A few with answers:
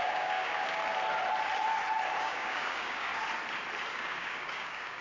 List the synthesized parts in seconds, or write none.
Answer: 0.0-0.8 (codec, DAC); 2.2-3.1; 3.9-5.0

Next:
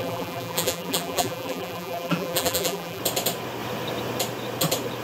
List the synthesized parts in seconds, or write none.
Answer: 0.0-3.0 (vocoder, BigVGAN v2)

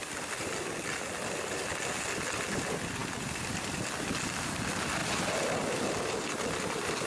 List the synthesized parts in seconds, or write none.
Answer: none